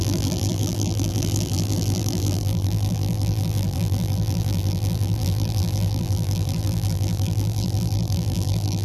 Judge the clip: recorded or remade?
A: remade